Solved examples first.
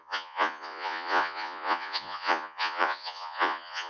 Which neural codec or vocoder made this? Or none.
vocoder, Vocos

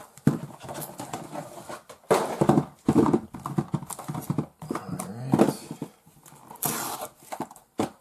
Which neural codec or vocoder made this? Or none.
none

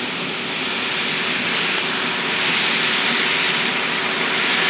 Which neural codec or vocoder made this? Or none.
none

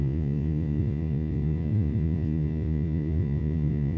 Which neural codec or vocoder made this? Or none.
vocoder, Vocos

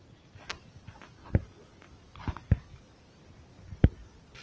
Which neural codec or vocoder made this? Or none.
none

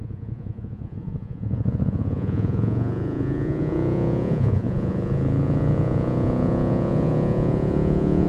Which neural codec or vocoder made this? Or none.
vocoder, Vocos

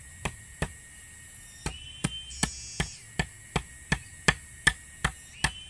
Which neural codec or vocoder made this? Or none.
none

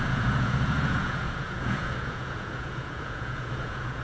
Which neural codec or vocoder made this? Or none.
vocoder, Vocos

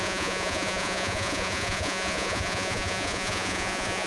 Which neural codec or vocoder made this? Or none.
vocoder, Vocos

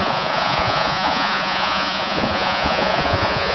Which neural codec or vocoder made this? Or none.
vocoder, Vocos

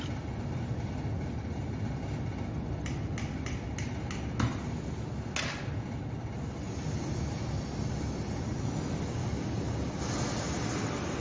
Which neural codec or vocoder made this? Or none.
none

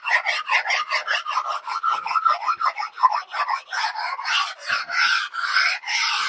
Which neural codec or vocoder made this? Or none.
none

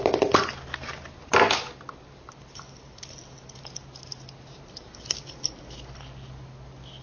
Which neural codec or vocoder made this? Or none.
none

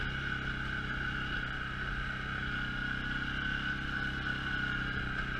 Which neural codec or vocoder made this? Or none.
none